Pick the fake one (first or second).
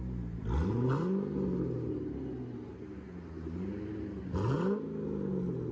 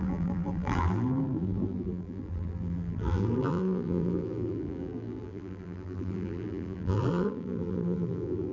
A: second